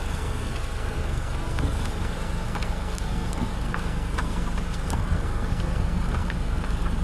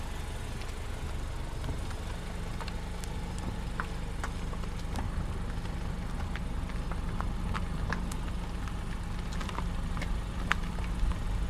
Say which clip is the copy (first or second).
first